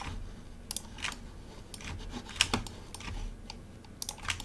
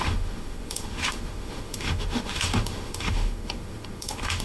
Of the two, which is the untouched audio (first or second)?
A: first